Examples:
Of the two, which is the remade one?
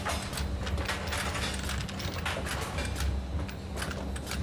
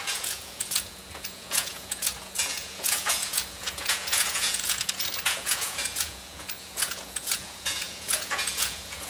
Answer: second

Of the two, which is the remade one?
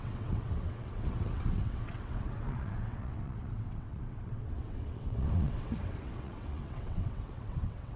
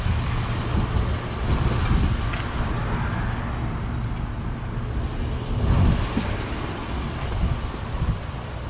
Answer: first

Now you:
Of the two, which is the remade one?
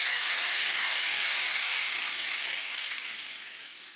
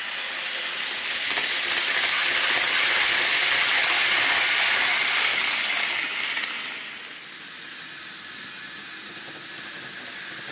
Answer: first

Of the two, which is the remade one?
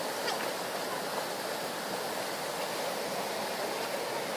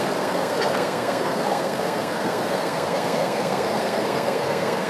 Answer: second